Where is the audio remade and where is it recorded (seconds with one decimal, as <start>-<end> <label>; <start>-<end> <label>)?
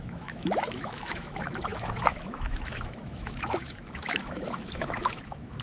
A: 0.0-5.6 remade